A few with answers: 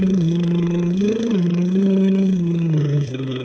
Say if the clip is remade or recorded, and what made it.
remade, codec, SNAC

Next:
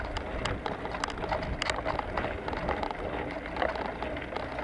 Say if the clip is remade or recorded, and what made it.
recorded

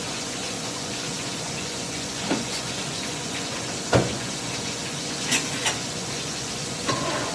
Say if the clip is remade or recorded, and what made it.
remade, vocoder, Vocos